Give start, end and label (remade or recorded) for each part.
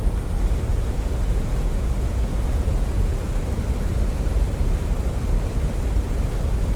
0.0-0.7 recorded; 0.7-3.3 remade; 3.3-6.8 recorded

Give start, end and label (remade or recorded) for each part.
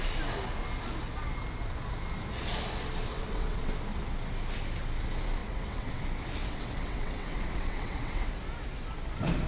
0.0-3.1 recorded; 3.1-3.7 remade; 3.7-5.4 recorded; 5.4-6.0 remade; 6.0-6.4 recorded; 6.4-8.3 remade; 8.3-9.5 recorded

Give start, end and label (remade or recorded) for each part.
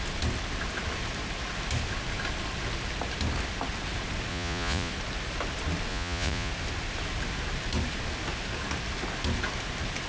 0.0-4.3 recorded; 4.3-4.9 remade; 4.9-5.9 recorded; 5.9-6.5 remade; 6.5-10.1 recorded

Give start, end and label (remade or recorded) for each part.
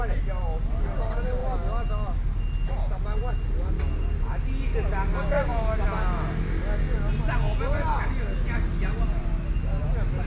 0.0-10.3 recorded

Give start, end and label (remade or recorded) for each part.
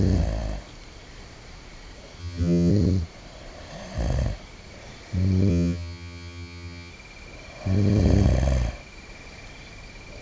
0.0-2.2 recorded; 2.2-2.7 remade; 2.7-5.5 recorded; 5.5-6.9 remade; 6.9-10.2 recorded